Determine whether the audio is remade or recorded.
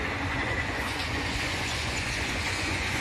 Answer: remade